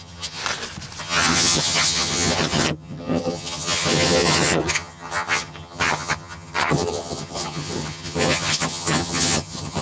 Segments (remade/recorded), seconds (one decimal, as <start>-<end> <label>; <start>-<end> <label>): 0.0-0.4 remade; 0.4-1.0 recorded; 1.0-9.8 remade